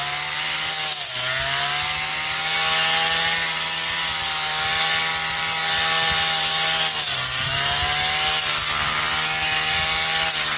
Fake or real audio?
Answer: real